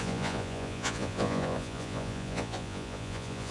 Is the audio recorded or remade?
remade